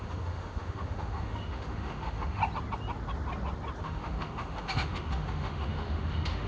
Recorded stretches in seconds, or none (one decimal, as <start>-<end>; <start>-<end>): 2.4-3.8